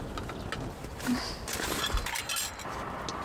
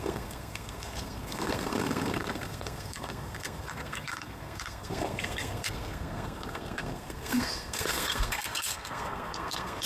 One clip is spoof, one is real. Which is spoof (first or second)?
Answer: second